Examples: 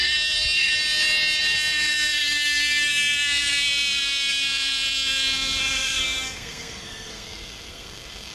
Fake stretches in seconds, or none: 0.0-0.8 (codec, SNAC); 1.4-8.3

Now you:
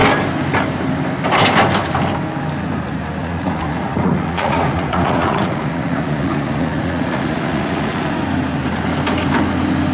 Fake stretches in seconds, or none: 3.2-8.1 (vocoder, Vocos)

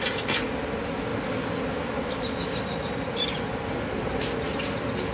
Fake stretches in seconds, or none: none

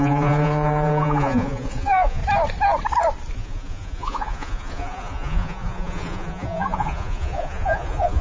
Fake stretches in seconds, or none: 0.0-2.2 (vocoder, Vocos); 3.3-8.2

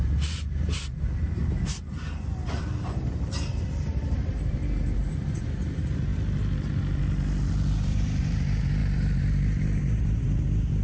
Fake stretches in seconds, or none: 0.0-6.1 (vocoder, BigVGAN v2); 7.5-10.8

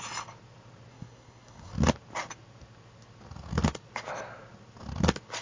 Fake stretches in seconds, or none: 0.9-1.7 (codec, SNAC)

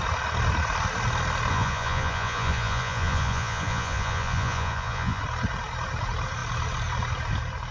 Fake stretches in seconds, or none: 1.5-5.2 (vocoder, Vocos)